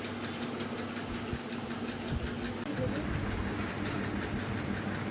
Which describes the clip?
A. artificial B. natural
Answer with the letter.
B